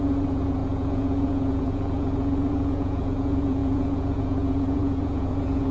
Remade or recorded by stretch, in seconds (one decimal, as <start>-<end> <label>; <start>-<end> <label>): 0.0-5.7 remade